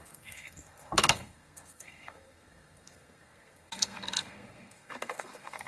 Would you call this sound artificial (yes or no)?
yes